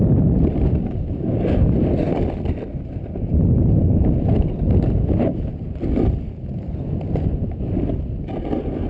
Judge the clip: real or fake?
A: real